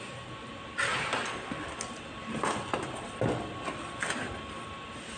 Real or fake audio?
fake